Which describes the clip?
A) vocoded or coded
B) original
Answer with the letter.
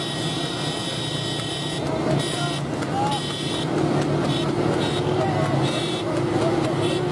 B